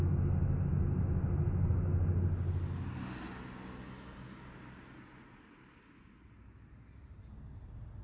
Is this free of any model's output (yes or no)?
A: yes